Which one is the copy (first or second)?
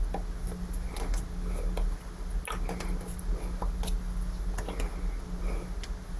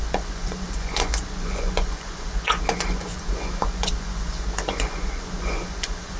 second